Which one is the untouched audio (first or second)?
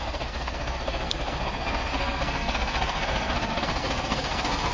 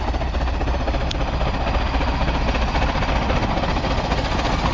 second